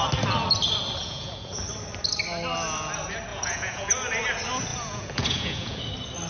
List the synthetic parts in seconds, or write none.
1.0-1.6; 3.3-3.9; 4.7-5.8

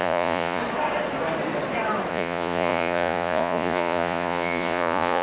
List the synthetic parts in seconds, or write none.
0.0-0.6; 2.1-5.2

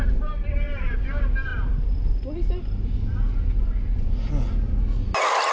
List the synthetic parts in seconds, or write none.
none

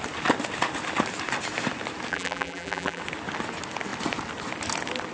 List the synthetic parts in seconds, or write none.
2.1-3.0

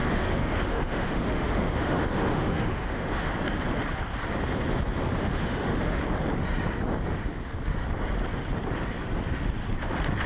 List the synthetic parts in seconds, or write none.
0.0-3.3; 5.2-6.0